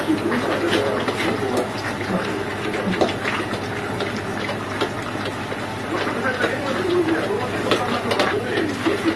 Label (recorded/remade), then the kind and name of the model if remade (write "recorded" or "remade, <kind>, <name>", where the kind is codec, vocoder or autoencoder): recorded